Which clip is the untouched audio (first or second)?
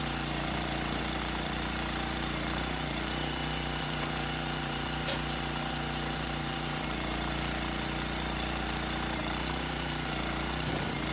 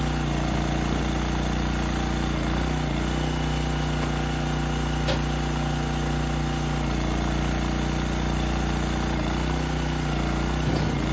second